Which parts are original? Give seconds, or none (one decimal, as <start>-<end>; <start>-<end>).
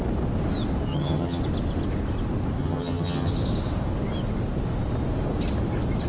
0.0-0.9; 1.4-2.6; 3.3-6.1